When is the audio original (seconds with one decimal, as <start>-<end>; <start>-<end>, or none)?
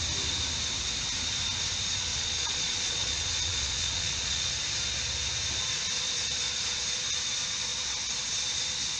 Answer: 0.0-2.1; 4.5-9.0